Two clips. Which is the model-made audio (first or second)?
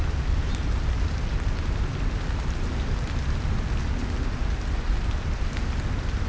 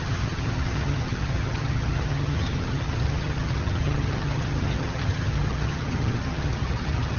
second